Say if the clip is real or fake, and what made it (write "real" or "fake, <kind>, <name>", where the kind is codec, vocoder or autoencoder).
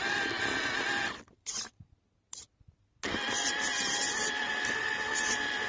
real